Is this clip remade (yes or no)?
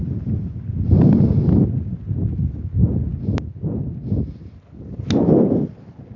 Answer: no